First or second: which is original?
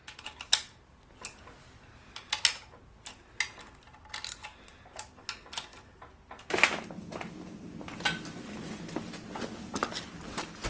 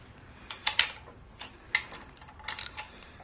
first